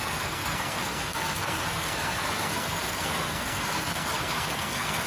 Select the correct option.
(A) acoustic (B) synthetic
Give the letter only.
B